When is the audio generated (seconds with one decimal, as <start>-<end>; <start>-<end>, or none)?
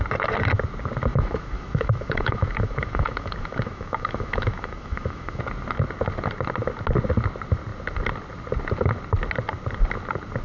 1.1-5.4